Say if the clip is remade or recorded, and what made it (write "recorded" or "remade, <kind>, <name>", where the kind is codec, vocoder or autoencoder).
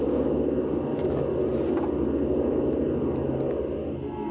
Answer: recorded